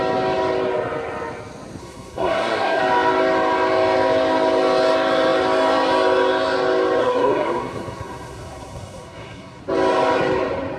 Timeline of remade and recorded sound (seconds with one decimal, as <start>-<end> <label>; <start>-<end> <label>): 0.0-1.8 recorded; 1.8-2.8 remade; 2.8-7.0 recorded; 7.0-9.6 remade; 9.6-10.8 recorded